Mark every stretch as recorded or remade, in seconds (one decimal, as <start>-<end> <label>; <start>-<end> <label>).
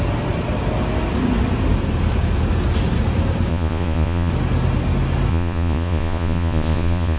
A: 0.0-3.5 recorded; 3.5-4.3 remade; 4.3-5.3 recorded; 5.3-7.2 remade